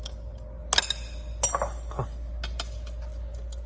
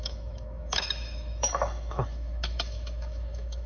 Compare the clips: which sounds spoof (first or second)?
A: second